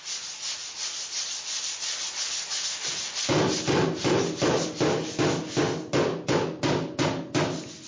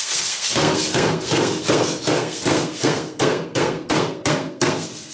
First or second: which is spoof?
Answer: second